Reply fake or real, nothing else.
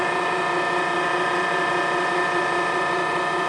fake